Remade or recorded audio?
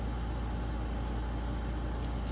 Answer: recorded